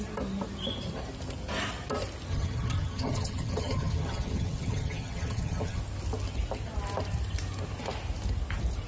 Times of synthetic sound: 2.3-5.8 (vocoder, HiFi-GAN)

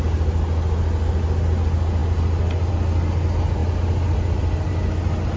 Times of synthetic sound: none